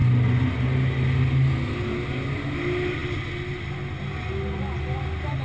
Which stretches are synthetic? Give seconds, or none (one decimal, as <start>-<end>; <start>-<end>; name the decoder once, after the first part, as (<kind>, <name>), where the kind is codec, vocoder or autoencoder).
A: none

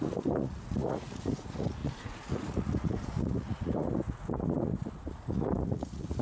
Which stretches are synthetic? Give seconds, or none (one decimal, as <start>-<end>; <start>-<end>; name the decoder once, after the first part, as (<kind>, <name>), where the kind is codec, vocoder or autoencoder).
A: 0.0-6.2 (vocoder, Vocos)

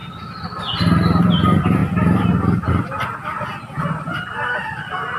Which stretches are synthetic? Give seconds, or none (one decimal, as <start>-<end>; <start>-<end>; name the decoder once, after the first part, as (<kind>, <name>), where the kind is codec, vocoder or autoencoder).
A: 0.0-1.2 (vocoder, BigVGAN v2)

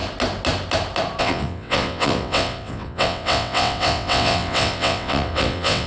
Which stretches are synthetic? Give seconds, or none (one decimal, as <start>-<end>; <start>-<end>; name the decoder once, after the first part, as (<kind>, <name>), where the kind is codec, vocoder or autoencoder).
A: 1.2-5.9 (vocoder, WaveNeXt)

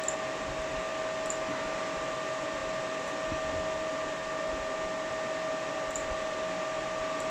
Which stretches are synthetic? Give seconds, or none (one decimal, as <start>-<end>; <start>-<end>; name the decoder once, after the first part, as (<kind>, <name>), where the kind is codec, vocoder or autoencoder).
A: none

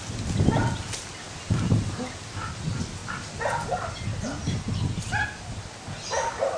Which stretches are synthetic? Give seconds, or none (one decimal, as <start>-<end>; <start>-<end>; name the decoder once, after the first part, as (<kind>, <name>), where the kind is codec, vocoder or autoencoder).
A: none

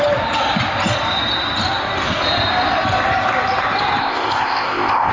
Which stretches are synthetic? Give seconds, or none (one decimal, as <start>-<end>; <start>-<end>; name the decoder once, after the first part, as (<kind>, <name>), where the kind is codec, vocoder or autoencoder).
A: 4.0-5.1 (codec, ZipCodec)

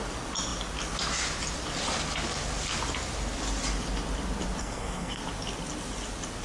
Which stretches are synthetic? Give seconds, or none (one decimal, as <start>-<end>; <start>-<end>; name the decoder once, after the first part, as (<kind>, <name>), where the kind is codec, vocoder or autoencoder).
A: 4.6-5.2 (codec, SNAC)